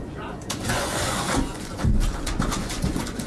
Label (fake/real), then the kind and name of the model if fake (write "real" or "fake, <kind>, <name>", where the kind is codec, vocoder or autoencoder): fake, vocoder, Vocos